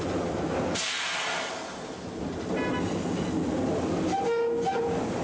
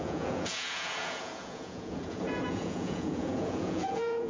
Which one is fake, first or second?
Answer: second